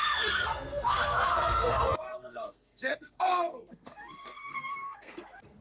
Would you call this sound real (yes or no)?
no